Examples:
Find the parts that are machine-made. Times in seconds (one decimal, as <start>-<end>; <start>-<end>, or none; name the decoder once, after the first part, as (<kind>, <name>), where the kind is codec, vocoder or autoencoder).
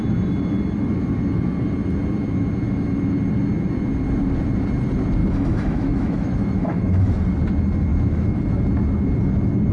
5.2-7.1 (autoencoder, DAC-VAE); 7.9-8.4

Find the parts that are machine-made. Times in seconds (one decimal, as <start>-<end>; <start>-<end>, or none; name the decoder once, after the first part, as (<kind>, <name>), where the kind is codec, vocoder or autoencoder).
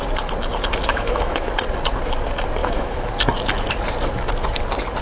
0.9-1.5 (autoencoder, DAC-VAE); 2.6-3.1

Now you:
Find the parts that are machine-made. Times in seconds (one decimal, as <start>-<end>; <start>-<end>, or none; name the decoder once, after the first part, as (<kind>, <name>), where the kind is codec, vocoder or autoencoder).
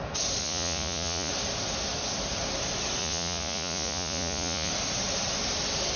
0.4-1.3 (vocoder, Vocos); 3.0-4.7